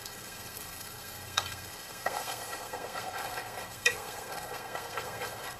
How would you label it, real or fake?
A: fake